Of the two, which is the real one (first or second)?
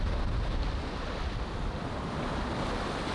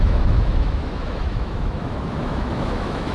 first